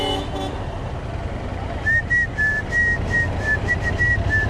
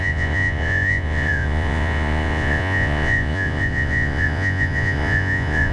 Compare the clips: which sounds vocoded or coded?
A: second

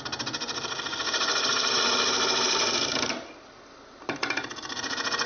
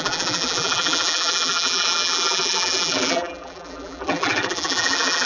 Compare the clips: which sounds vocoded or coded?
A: second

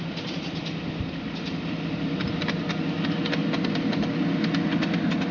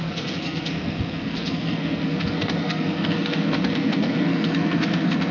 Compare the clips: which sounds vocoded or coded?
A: second